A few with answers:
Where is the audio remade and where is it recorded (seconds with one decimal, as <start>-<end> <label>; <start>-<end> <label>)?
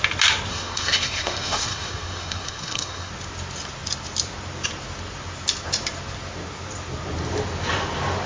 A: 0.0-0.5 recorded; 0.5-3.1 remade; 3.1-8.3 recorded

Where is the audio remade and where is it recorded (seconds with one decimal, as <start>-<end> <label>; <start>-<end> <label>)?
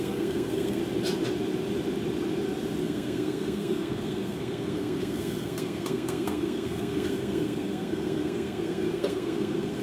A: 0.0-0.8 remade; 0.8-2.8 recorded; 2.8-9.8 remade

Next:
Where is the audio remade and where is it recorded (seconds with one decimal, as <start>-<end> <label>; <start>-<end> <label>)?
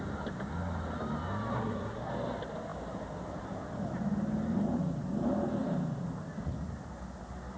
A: 0.0-1.5 recorded; 1.5-2.1 remade; 2.1-7.6 recorded